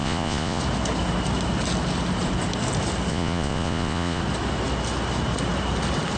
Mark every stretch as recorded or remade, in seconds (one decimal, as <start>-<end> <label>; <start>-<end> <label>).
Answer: 0.0-0.6 remade; 0.6-3.1 recorded; 3.1-4.2 remade; 4.2-6.2 recorded